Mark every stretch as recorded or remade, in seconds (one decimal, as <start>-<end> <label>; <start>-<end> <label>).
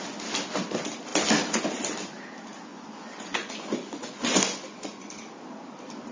0.0-2.7 recorded; 2.7-5.1 remade; 5.1-6.1 recorded